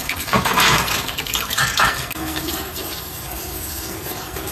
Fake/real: fake